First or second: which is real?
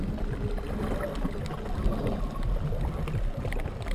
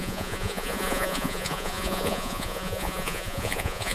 first